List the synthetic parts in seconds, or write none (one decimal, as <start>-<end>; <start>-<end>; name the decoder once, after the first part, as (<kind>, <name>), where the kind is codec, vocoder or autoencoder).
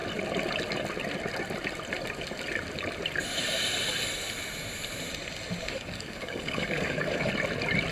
5.6-7.3 (codec, DAC)